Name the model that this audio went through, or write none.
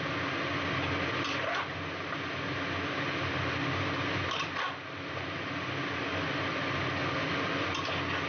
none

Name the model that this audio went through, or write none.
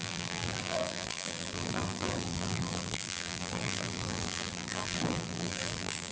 vocoder, BigVGAN v2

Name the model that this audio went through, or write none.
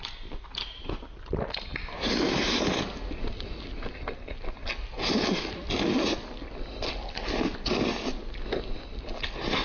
none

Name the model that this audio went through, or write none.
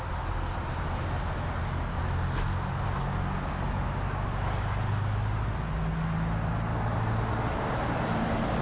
none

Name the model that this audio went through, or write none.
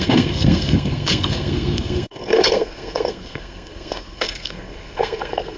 codec, SNAC